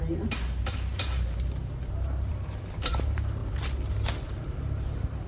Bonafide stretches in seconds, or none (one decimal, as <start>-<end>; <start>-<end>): 3.4-4.1